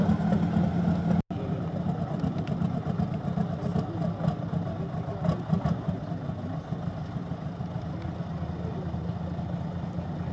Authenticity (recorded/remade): recorded